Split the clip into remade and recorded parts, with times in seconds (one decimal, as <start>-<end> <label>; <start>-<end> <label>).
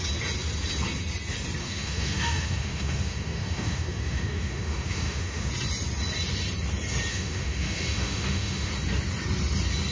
0.0-1.6 recorded; 1.6-5.5 remade; 5.5-7.1 recorded; 7.1-8.7 remade; 8.7-9.9 recorded